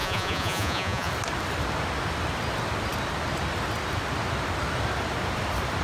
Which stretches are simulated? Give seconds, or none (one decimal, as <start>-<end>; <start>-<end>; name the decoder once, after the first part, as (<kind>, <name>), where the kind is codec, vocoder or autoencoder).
0.0-1.1 (vocoder, Vocos)

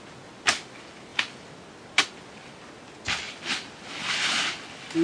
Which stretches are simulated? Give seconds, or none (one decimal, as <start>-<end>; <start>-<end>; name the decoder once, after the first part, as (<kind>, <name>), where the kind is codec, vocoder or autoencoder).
none

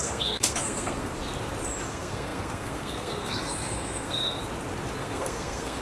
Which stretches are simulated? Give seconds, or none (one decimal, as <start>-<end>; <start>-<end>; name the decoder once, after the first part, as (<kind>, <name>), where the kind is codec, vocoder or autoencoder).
0.0-1.1 (codec, SNAC); 1.9-4.4; 5.0-5.8

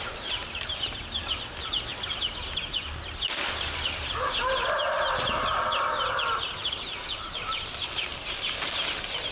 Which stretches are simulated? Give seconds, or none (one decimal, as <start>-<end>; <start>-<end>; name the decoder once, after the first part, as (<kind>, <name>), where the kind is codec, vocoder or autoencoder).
none

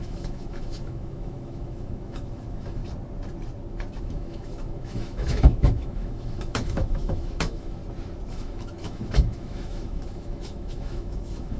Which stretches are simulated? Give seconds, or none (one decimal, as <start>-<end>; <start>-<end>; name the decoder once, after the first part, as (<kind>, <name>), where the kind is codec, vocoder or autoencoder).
0.0-2.8 (autoencoder, DAC-VAE); 4.0-7.8; 8.3-11.6

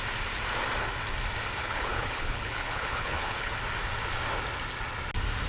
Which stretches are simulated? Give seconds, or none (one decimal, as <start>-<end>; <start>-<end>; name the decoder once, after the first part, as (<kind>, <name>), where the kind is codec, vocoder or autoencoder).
1.6-3.5 (codec, HILCodec)

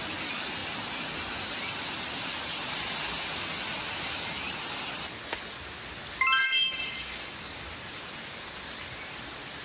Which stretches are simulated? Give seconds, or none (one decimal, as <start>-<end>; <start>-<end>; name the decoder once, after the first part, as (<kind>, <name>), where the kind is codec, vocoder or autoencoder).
6.4-7.5 (codec, DAC)